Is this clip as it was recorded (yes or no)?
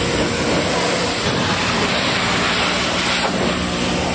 yes